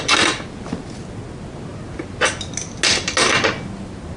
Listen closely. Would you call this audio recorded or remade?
recorded